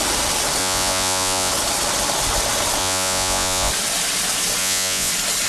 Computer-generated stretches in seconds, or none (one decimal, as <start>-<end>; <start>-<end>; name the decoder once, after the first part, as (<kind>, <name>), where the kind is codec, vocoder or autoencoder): 0.6-1.5 (vocoder, Vocos); 2.8-3.7; 4.6-5.1